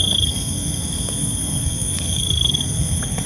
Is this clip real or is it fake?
fake